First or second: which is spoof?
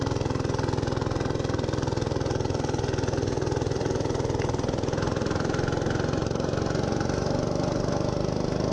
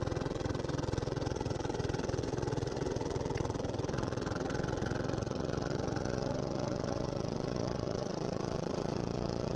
second